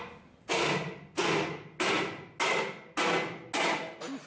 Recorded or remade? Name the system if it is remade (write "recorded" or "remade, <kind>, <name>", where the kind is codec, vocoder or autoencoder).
recorded